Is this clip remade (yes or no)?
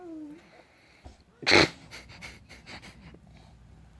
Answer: no